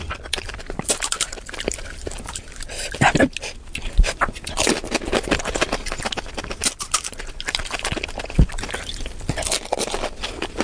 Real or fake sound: real